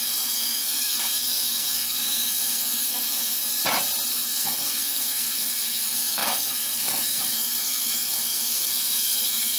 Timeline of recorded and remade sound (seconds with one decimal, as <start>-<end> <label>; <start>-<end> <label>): 0.0-3.6 remade; 3.6-4.1 recorded; 4.1-9.6 remade

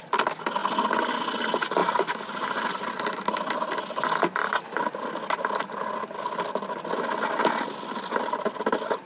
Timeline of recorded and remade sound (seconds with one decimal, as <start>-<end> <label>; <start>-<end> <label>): 0.0-9.1 recorded

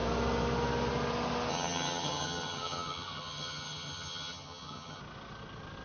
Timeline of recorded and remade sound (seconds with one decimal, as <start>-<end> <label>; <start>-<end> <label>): 0.0-1.5 recorded; 1.5-5.0 remade; 5.0-5.8 recorded

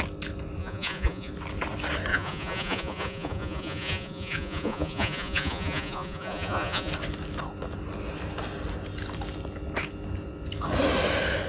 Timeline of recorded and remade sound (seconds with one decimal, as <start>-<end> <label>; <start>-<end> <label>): 0.0-0.6 recorded; 0.6-1.3 remade; 1.3-2.1 recorded; 2.1-6.9 remade; 6.9-11.5 recorded

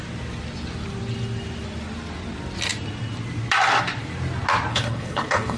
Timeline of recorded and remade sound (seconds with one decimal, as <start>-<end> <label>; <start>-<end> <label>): 0.0-4.7 recorded; 4.7-5.6 remade

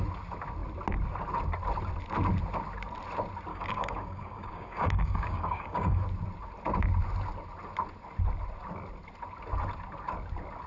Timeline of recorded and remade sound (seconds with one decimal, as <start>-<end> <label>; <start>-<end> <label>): 0.0-3.5 recorded; 3.5-6.0 remade; 6.0-10.7 recorded

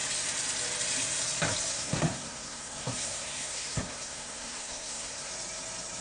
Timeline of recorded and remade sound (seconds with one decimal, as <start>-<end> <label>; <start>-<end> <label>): 0.0-1.7 recorded; 1.7-5.3 remade; 5.3-6.0 recorded

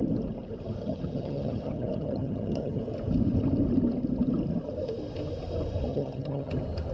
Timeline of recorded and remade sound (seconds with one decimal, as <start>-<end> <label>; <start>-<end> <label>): 0.0-0.8 recorded; 0.8-2.8 remade; 2.8-5.9 recorded; 5.9-6.5 remade; 6.5-6.9 recorded